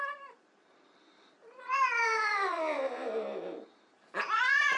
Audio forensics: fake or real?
fake